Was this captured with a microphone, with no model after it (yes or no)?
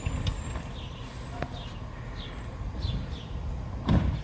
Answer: yes